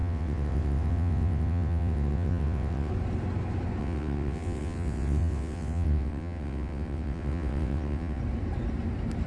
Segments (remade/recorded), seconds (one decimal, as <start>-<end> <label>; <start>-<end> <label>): 0.0-2.9 remade; 2.9-3.8 recorded; 3.8-8.2 remade; 8.2-9.3 recorded